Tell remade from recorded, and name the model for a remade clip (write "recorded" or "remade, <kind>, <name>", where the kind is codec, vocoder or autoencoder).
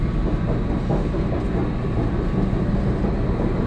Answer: recorded